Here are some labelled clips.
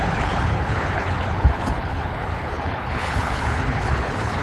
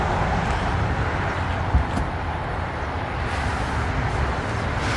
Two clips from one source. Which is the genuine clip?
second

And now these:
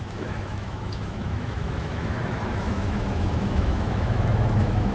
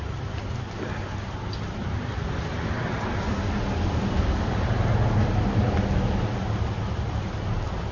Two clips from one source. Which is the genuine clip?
second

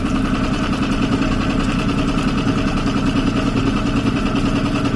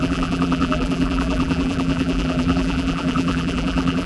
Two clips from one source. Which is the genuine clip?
first